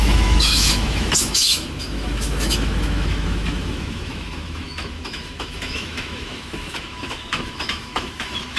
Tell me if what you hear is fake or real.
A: fake